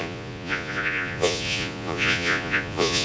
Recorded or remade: remade